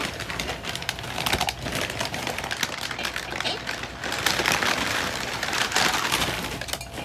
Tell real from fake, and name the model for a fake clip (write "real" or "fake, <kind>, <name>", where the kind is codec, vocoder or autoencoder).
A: real